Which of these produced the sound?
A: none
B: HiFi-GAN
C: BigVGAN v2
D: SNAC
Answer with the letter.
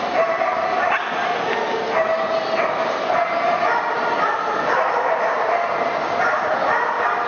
A